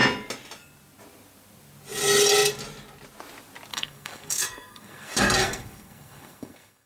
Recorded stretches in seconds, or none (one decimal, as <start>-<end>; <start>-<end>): 0.0-3.7